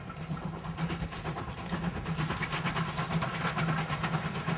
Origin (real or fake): real